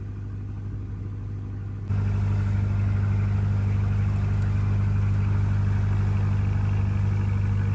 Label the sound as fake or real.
real